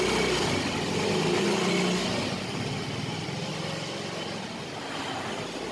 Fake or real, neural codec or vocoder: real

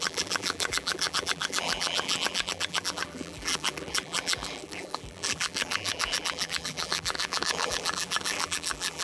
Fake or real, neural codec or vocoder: fake, vocoder, BigVGAN v2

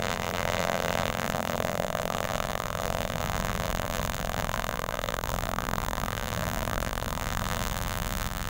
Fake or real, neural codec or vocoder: fake, vocoder, BigVGAN v2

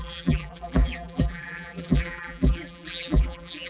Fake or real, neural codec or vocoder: fake, vocoder, BigVGAN v2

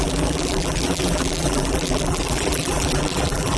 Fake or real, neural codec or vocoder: fake, vocoder, BigVGAN v2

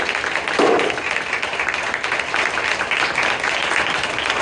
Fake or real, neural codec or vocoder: real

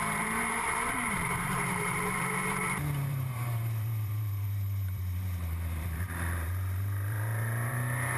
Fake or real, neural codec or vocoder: fake, vocoder, BigVGAN v2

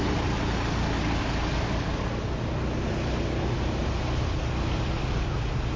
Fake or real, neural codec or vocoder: real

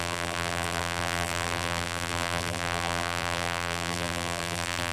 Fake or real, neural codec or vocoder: fake, vocoder, BigVGAN v2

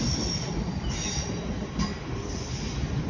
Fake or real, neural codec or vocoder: real